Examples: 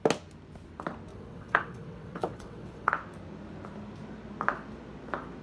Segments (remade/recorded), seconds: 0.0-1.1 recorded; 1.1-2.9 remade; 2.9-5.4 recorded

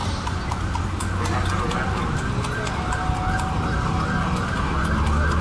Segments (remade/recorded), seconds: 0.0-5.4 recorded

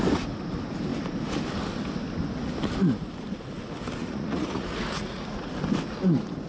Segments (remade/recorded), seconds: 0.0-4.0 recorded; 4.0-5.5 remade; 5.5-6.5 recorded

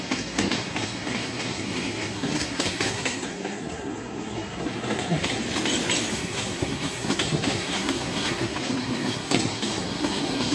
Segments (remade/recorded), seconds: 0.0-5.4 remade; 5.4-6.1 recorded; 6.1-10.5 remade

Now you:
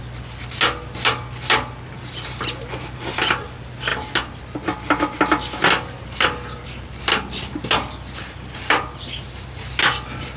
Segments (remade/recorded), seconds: 0.0-10.4 recorded